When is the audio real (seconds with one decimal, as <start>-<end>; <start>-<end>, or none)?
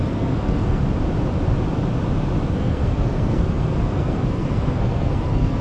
0.8-2.5